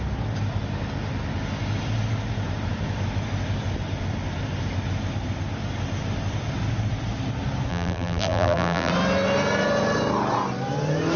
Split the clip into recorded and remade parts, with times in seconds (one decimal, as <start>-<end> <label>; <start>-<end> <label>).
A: 0.0-7.7 recorded; 7.7-8.9 remade; 8.9-11.2 recorded